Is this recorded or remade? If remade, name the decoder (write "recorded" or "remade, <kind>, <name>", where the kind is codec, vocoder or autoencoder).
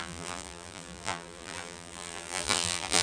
remade, vocoder, BigVGAN v2